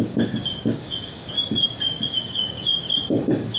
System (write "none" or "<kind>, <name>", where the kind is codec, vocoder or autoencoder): codec, DAC